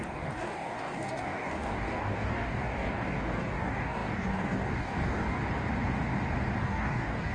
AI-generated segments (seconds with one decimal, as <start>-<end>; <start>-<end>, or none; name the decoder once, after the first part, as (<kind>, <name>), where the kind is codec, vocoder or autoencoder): 0.0-5.4 (codec, DAC); 6.6-7.3